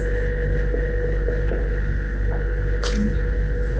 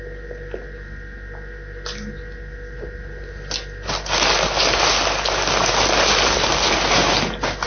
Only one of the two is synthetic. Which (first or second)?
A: first